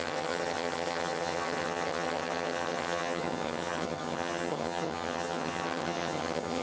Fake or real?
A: fake